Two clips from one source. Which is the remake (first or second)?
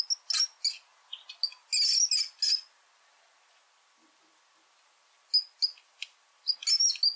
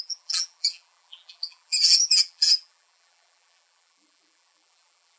second